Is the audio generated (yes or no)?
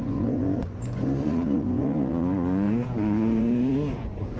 yes